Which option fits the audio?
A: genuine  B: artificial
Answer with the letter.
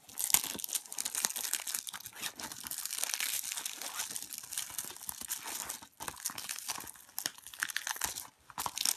A